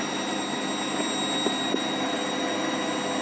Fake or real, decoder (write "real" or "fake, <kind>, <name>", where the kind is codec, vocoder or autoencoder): real